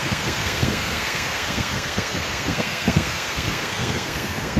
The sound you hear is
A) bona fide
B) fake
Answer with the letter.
B